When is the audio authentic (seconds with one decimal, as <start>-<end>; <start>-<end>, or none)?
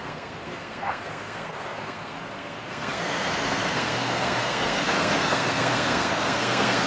none